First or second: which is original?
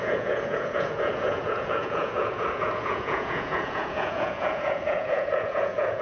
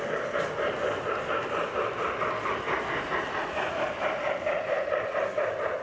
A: second